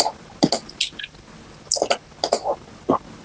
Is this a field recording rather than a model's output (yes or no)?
yes